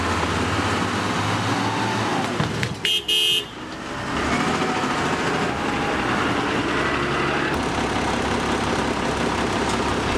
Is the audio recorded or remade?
recorded